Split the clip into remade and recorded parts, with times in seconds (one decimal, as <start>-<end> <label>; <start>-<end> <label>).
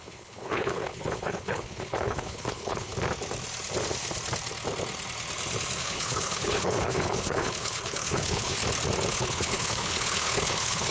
0.0-2.9 remade; 2.9-5.8 recorded; 5.8-8.6 remade; 8.6-9.1 recorded; 9.1-10.9 remade